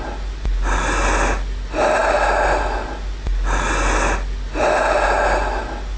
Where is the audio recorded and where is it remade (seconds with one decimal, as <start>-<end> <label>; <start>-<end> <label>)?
0.0-6.0 recorded